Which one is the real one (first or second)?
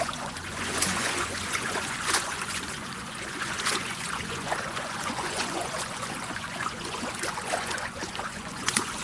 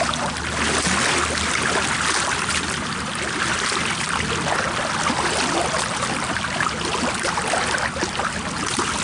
second